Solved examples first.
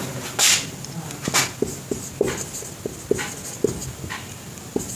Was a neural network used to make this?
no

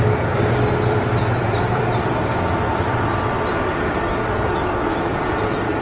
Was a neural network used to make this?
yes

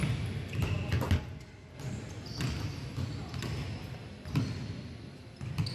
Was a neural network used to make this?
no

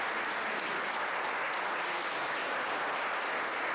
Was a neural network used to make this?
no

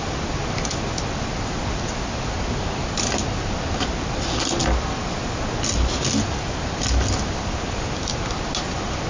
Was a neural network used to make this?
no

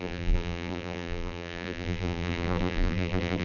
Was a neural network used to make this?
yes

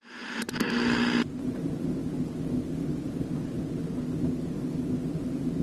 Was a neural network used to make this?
no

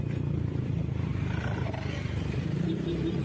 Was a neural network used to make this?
yes